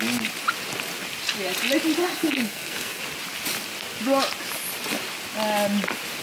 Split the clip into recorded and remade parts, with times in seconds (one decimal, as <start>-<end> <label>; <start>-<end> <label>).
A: 0.0-2.0 recorded; 2.0-3.0 remade; 3.0-6.2 recorded